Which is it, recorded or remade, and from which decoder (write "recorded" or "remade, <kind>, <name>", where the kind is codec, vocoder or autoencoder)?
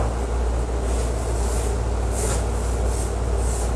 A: recorded